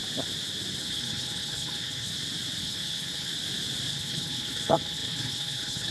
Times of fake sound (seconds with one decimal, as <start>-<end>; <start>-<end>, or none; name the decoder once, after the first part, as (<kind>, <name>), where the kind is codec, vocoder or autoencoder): 0.8-2.1 (codec, HILCodec); 2.6-3.3; 3.9-5.9